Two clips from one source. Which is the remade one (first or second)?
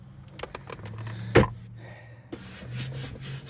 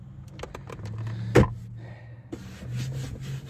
second